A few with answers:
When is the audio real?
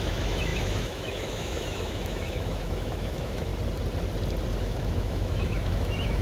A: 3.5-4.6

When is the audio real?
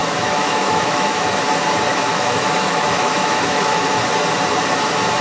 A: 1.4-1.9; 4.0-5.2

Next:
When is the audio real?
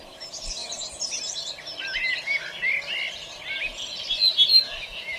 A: 0.0-4.5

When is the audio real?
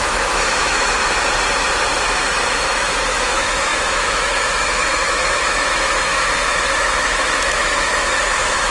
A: 1.0-2.0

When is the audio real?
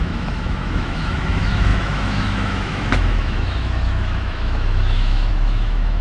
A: none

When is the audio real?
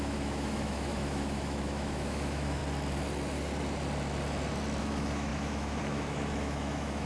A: 2.6-4.8